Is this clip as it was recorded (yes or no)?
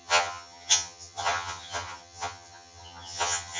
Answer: no